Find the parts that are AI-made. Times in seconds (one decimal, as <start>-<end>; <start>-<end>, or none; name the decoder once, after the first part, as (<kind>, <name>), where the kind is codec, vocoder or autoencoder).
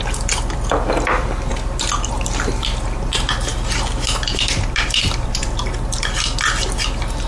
none